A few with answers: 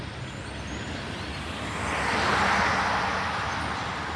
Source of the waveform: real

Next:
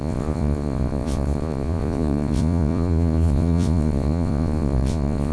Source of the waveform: fake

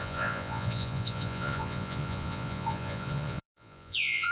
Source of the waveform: fake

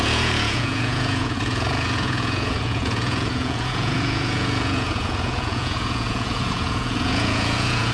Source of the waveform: fake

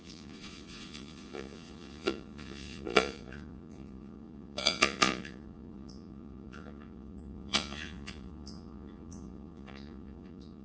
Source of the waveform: fake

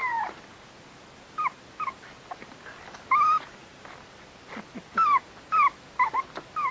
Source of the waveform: real